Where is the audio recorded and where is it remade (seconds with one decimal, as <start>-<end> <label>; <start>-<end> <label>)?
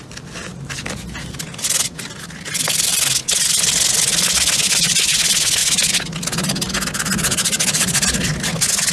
0.0-8.9 recorded